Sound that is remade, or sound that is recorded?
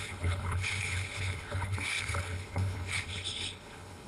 remade